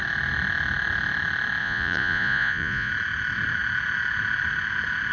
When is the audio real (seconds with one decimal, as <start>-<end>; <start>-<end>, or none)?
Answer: 0.0-1.6; 2.9-5.1